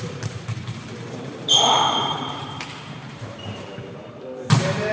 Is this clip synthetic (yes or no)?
yes